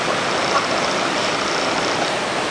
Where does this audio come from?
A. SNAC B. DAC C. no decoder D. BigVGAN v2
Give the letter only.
C